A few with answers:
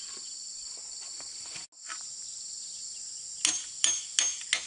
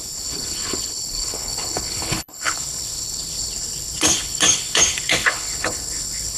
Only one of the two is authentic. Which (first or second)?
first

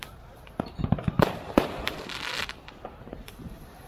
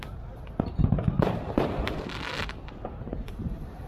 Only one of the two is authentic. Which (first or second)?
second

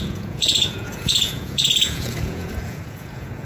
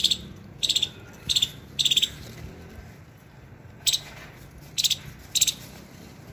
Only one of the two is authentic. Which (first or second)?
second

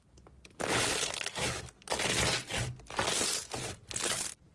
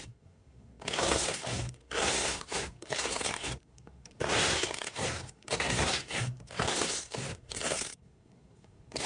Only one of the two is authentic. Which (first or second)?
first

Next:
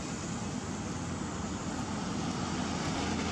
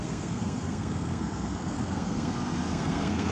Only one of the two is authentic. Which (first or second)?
first